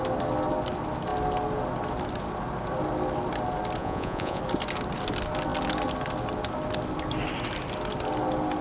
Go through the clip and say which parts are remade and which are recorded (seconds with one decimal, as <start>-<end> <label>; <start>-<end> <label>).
0.0-3.8 recorded; 3.8-4.4 remade; 4.4-8.6 recorded